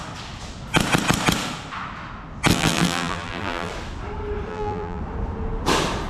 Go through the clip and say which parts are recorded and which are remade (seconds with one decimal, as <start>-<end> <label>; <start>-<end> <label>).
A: 0.0-2.5 recorded; 2.5-3.7 remade; 3.7-4.5 recorded; 4.5-5.0 remade; 5.0-6.1 recorded